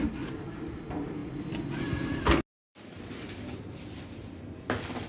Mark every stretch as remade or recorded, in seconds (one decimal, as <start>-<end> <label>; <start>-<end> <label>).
0.0-5.1 recorded